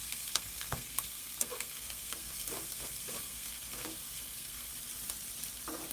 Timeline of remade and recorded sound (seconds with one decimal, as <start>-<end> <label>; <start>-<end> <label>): 0.0-4.7 remade; 4.7-5.9 recorded